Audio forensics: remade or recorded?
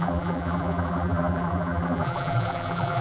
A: remade